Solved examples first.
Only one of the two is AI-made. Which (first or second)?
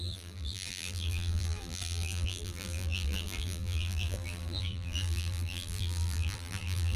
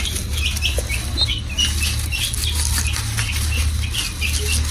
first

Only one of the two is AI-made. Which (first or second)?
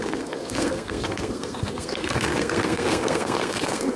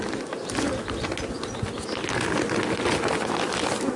first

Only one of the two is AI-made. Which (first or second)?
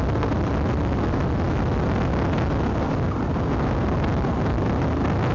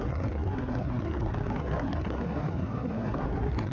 second